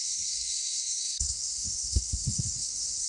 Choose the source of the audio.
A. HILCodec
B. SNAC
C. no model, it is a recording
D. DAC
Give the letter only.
B